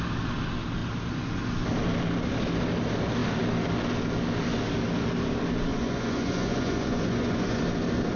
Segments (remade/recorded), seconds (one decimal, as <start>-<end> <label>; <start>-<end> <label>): 0.0-5.7 recorded; 5.7-7.6 remade; 7.6-8.2 recorded